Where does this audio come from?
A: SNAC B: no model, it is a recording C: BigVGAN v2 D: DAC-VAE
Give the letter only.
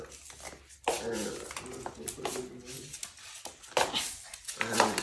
B